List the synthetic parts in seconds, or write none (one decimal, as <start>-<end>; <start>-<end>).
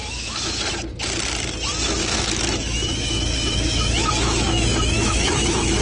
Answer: 0.0-0.7; 2.0-5.8